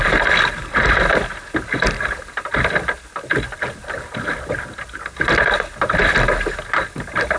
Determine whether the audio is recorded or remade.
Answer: recorded